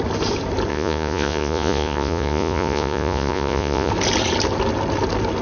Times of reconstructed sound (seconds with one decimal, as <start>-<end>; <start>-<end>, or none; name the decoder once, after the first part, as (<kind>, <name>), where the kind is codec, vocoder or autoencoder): 0.7-3.9 (vocoder, Vocos)